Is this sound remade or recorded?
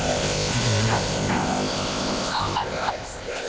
remade